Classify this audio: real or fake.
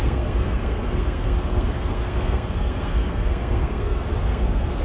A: fake